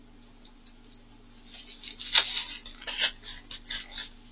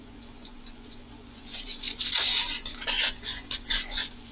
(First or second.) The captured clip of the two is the first